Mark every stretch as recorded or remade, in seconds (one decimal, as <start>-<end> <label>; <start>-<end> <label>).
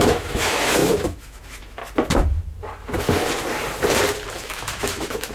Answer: 0.0-1.8 remade; 1.8-4.3 recorded; 4.3-5.3 remade